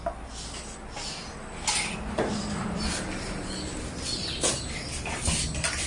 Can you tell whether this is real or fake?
real